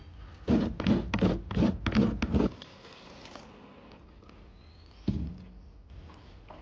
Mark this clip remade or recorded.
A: recorded